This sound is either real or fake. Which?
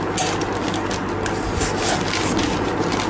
real